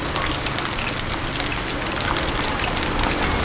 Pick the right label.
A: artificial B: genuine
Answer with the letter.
B